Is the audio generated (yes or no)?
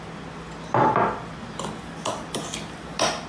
no